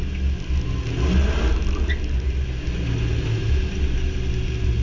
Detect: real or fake real